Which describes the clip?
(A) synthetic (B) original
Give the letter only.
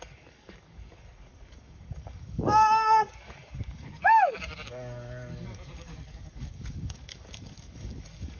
A